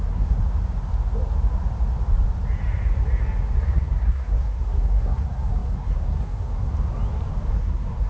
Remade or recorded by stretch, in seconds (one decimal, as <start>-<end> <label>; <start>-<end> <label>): 0.0-0.4 remade; 0.4-3.6 recorded; 3.6-6.7 remade; 6.7-7.5 recorded; 7.5-8.1 remade